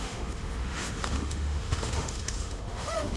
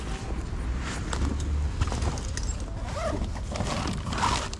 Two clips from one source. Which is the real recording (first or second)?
second